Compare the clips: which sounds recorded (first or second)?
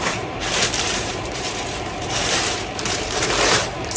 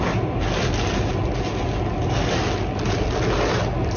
second